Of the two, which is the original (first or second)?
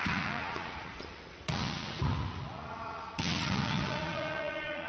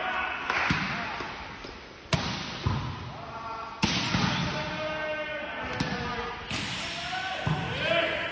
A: second